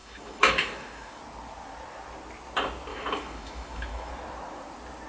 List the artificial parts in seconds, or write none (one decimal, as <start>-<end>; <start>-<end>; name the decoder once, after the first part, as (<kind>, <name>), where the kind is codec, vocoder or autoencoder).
0.0-1.2 (autoencoder, DAC-VAE); 2.9-4.1